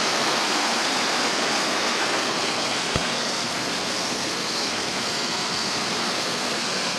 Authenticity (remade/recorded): remade